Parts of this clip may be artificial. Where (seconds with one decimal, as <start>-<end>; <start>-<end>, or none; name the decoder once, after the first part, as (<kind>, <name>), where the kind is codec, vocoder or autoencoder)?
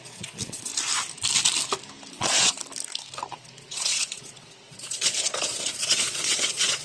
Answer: 0.0-0.7 (vocoder, Vocos); 2.1-2.6; 3.3-6.8